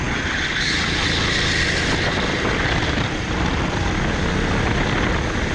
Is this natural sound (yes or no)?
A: yes